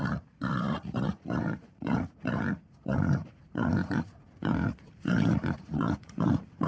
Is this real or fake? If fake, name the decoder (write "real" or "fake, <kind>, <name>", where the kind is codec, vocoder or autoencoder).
fake, vocoder, Vocos